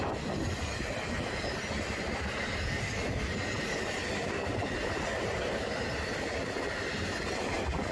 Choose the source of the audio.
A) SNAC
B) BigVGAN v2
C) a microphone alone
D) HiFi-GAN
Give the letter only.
C